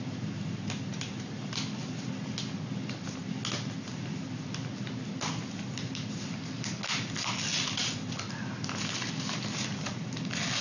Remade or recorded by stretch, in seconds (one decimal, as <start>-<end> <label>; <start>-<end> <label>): 0.0-10.6 recorded